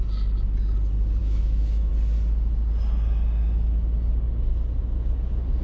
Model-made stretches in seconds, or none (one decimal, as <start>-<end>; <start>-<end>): 1.2-1.9